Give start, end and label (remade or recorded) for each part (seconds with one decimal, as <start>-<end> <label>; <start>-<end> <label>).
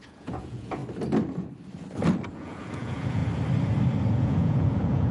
0.0-0.8 remade; 0.8-2.3 recorded; 2.3-3.2 remade; 3.2-4.1 recorded; 4.1-5.1 remade